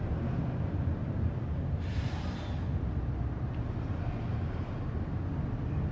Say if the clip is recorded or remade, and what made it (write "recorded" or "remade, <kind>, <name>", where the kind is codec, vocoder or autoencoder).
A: recorded